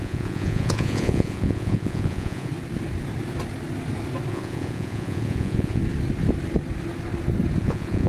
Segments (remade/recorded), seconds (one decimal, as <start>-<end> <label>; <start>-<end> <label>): 0.0-2.5 remade; 2.5-4.3 recorded; 4.3-5.8 remade; 5.8-7.6 recorded; 7.6-8.1 remade